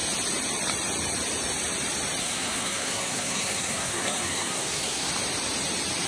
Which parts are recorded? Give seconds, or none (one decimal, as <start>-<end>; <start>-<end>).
0.0-2.2; 5.1-6.1